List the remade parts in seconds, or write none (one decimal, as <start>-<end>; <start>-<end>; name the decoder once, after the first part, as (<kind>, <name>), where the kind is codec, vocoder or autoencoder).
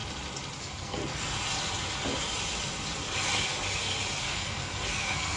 0.6-1.0 (codec, SNAC); 4.2-5.4